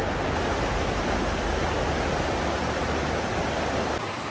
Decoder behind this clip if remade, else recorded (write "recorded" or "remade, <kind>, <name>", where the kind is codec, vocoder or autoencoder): recorded